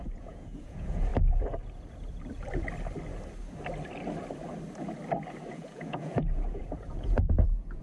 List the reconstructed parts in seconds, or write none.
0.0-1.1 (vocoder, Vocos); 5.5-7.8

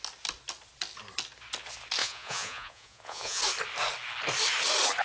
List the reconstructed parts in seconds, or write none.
2.0-3.4 (vocoder, Vocos)

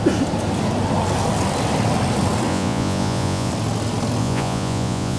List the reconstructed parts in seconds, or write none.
2.5-3.5 (vocoder, Vocos); 4.2-5.2